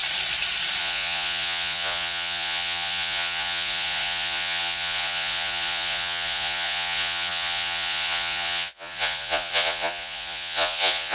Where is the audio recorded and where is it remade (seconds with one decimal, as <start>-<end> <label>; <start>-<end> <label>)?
0.0-0.8 recorded; 0.8-11.1 remade